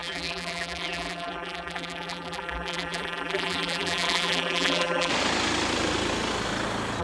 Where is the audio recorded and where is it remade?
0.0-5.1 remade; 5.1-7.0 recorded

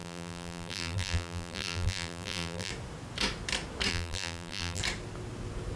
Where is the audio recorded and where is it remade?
0.0-2.7 remade; 2.7-3.9 recorded; 3.9-4.8 remade; 4.8-5.8 recorded

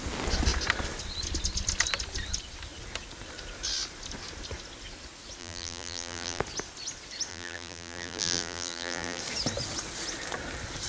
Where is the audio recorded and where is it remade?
0.0-5.4 recorded; 5.4-6.4 remade; 6.4-7.3 recorded; 7.3-9.2 remade; 9.2-10.9 recorded

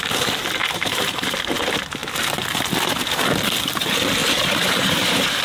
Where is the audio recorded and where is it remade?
0.0-0.6 recorded; 0.6-1.4 remade; 1.4-4.2 recorded; 4.2-5.4 remade

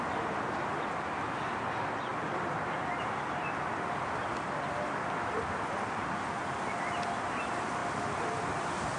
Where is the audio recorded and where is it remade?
0.0-2.1 recorded; 2.1-4.0 remade; 4.0-9.0 recorded